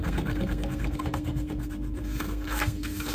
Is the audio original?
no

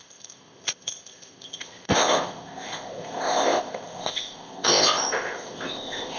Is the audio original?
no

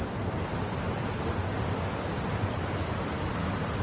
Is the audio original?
yes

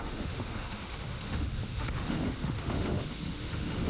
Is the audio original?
no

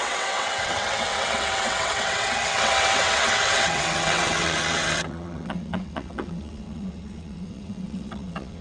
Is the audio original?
no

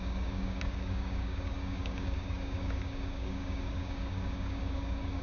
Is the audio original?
no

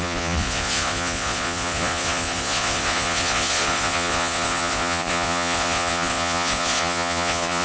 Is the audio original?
no